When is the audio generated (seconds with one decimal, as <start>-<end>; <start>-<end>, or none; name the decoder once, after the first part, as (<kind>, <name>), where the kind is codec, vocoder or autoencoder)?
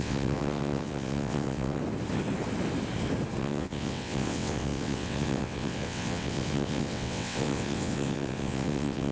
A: 0.0-1.8 (vocoder, WaveNeXt); 3.4-9.1